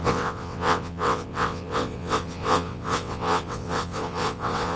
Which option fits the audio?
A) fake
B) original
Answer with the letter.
A